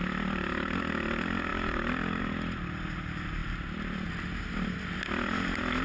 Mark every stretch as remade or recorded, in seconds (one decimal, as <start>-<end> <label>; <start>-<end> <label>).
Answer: 0.0-1.5 recorded; 1.5-2.2 remade; 2.2-3.4 recorded; 3.4-4.1 remade; 4.1-5.8 recorded